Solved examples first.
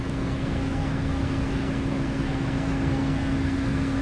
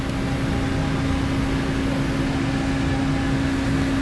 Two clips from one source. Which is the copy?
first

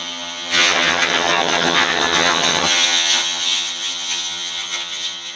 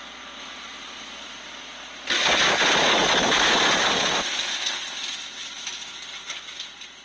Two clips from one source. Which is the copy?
first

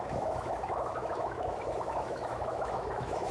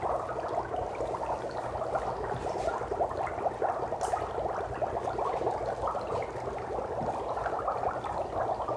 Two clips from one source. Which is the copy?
first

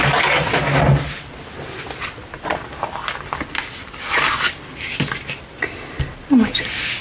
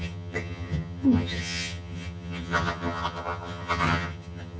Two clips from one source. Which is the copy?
second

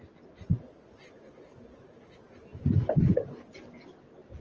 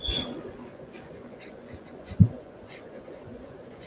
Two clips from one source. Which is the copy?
second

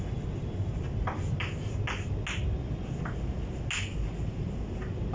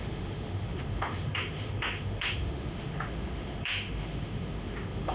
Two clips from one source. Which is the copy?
second